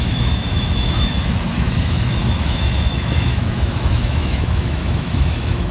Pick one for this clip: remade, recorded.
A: remade